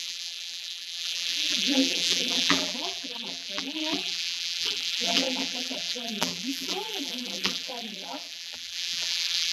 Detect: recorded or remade remade